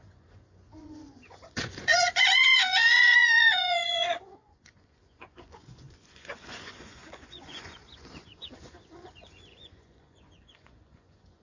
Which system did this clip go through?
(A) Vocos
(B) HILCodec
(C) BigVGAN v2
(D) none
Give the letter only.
A